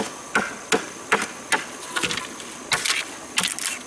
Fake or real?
real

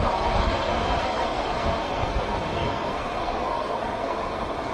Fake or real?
fake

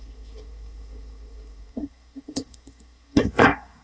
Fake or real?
fake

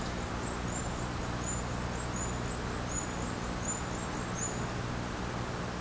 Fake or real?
real